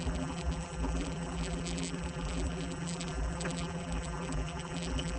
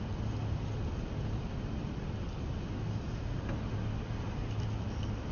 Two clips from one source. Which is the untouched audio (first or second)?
second